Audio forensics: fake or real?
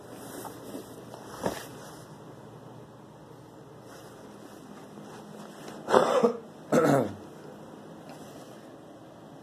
real